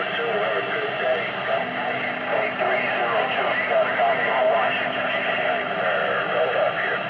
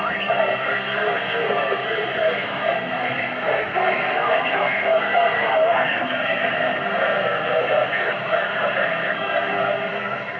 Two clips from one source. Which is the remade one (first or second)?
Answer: second